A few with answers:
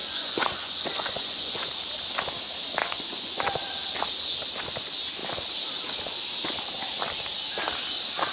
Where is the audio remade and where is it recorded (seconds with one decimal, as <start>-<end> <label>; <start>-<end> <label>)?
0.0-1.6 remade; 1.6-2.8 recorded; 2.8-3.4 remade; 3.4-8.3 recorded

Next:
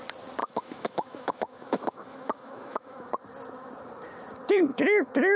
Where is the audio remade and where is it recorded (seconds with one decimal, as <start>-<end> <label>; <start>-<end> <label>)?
0.0-0.4 recorded; 0.4-3.1 remade; 3.1-4.7 recorded; 4.7-5.4 remade

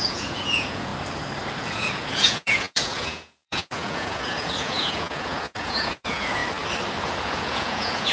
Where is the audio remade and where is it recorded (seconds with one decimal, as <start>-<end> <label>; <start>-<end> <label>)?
0.0-0.9 remade; 0.9-1.6 recorded; 1.6-6.4 remade; 6.4-7.0 recorded; 7.0-8.1 remade

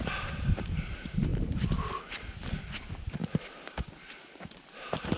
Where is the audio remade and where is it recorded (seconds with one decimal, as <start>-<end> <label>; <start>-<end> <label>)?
0.0-1.3 remade; 1.3-2.1 recorded; 2.1-3.2 remade; 3.2-4.1 recorded; 4.1-5.2 remade

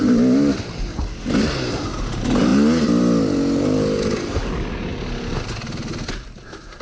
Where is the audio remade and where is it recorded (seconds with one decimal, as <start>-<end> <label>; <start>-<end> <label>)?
0.0-6.8 recorded